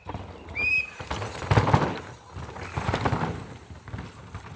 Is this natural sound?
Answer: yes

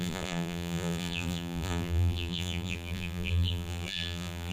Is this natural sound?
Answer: no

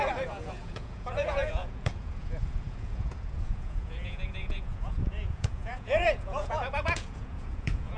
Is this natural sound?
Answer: no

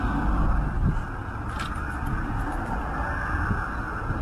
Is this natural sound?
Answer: yes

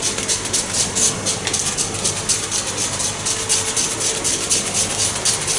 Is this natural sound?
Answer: yes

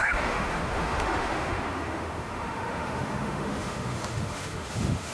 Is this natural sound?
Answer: no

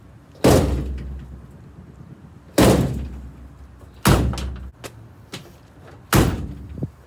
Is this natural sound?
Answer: yes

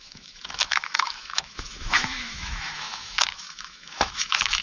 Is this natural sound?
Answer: no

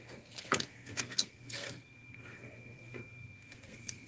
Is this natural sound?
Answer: no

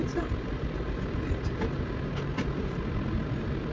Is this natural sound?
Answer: yes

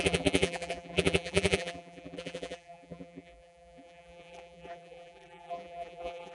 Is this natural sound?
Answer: no